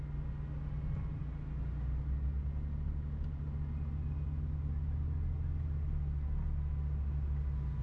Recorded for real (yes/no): yes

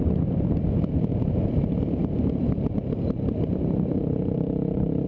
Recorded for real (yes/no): no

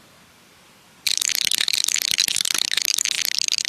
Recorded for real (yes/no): yes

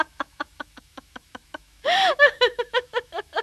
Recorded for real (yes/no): no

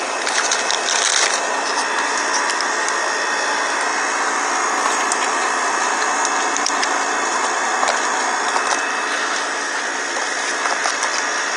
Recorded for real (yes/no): yes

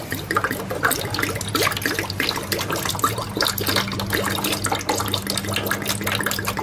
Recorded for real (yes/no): yes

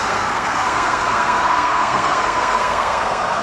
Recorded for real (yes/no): no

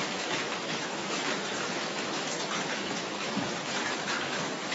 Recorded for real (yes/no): no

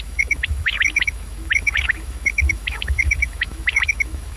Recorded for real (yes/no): no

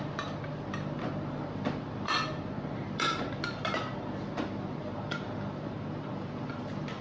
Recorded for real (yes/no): yes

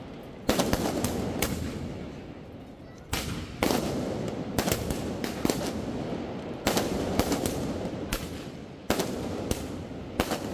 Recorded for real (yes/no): yes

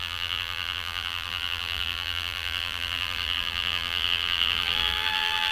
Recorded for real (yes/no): no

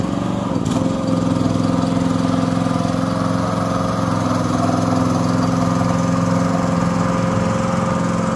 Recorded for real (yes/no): yes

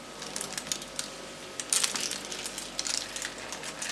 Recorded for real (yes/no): yes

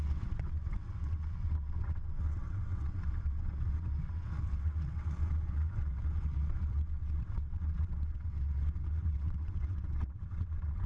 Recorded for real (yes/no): no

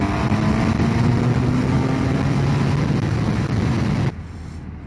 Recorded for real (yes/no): yes